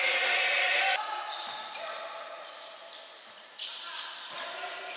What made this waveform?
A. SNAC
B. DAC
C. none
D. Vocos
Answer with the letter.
C